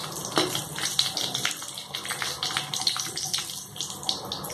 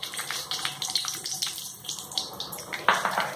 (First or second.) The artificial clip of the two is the second